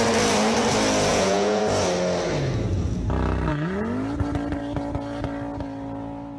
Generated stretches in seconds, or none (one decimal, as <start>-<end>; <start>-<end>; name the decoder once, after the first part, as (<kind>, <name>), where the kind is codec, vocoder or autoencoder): 1.1-1.6 (vocoder, Vocos)